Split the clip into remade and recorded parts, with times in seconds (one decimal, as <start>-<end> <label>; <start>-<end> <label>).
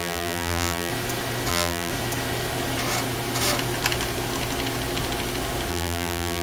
0.0-0.9 remade; 0.9-1.5 recorded; 1.5-1.9 remade; 1.9-5.7 recorded; 5.7-6.4 remade